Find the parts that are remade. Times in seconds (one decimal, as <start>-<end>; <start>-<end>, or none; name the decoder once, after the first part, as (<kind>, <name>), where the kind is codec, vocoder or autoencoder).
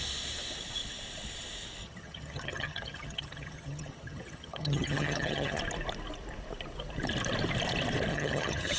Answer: 1.8-5.6 (vocoder, HiFi-GAN); 8.1-8.8